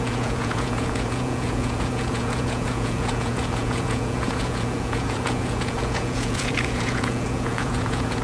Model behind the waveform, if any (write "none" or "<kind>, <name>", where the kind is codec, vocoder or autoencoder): vocoder, Vocos